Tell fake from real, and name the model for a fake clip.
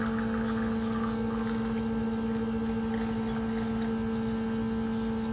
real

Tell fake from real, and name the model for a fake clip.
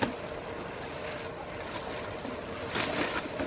real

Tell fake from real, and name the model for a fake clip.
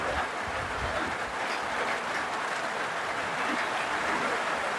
real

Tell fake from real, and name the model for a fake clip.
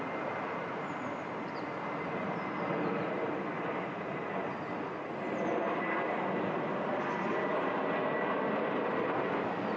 real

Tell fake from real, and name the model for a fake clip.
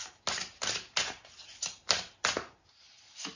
real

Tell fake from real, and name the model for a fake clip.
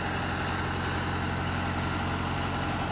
real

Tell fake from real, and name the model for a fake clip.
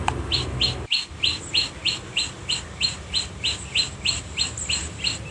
real